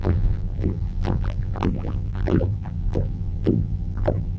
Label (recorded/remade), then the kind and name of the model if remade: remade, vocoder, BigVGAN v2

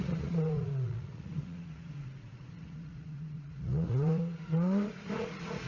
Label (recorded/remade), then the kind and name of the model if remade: remade, vocoder, Vocos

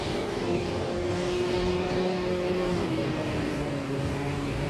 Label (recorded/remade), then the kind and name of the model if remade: remade, codec, DAC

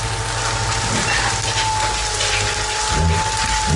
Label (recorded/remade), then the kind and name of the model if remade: recorded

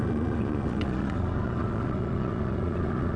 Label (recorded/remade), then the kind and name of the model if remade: remade, vocoder, Vocos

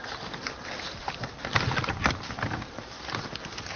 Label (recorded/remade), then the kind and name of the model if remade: recorded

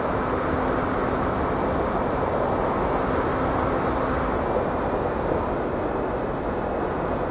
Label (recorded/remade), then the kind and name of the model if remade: recorded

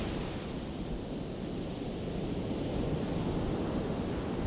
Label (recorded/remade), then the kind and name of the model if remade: recorded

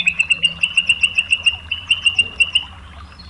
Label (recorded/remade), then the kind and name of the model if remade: recorded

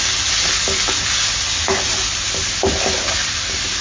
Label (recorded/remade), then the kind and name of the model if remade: recorded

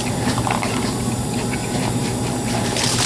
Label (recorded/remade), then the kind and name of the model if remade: remade, vocoder, BigVGAN v2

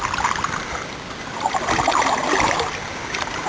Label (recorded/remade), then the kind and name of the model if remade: recorded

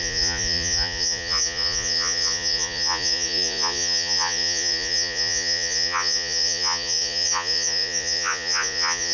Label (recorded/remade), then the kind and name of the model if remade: remade, vocoder, Vocos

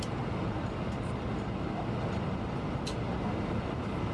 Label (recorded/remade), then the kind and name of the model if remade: recorded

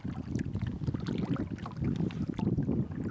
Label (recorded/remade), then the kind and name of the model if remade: recorded